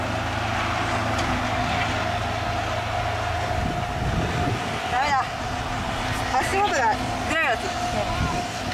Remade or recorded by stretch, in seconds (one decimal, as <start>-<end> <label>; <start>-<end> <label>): 0.0-8.7 recorded